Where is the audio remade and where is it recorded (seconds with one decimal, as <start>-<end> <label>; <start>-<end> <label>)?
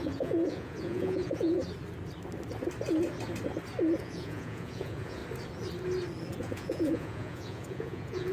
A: 0.0-1.6 remade; 1.6-4.0 recorded; 4.0-5.2 remade; 5.2-6.4 recorded; 6.4-8.3 remade